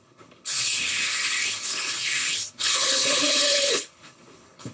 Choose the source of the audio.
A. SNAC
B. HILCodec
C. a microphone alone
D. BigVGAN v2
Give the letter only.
B